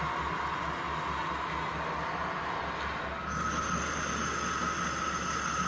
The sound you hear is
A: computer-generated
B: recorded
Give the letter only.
B